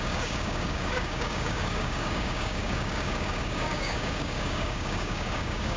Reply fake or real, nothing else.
fake